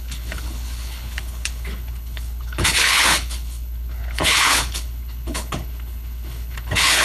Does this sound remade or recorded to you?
remade